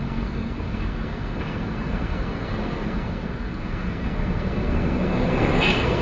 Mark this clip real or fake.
fake